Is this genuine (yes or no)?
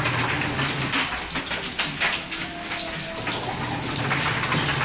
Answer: yes